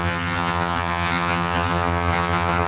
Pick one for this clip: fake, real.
fake